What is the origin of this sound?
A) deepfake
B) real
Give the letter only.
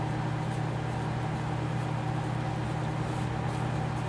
B